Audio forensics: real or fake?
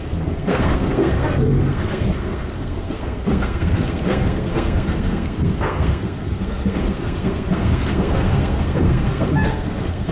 fake